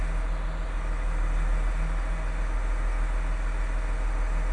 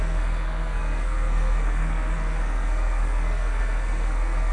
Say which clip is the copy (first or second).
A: second